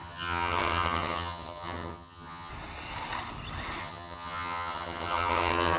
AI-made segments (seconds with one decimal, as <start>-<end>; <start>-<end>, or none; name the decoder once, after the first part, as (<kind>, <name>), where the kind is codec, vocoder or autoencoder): 0.0-2.5 (vocoder, HiFi-GAN); 3.8-5.8